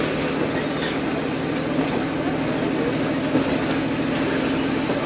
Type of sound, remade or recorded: recorded